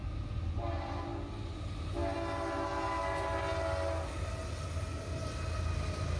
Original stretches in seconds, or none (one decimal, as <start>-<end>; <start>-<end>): 0.0-6.2